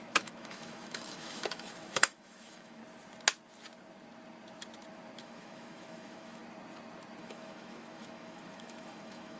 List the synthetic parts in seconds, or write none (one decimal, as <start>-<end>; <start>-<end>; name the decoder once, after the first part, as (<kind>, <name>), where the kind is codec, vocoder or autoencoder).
0.0-2.8 (autoencoder, DAC-VAE); 5.2-6.4; 7.2-9.4